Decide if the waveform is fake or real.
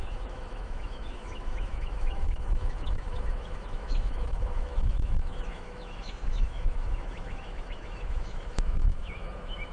fake